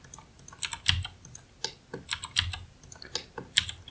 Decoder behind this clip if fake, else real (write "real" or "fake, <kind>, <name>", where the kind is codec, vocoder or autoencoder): real